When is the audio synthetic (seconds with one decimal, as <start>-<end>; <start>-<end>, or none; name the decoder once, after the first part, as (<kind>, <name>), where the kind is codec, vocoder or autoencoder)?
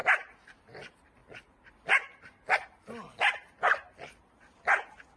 none